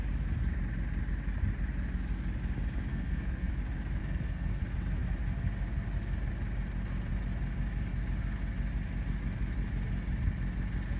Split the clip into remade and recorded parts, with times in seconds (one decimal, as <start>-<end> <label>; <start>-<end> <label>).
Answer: 0.0-2.9 recorded; 2.9-3.5 remade; 3.5-4.0 recorded; 4.0-4.6 remade; 4.6-11.0 recorded